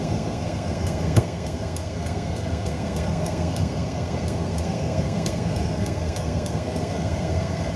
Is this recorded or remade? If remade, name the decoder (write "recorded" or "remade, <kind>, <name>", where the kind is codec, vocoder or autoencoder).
remade, codec, SNAC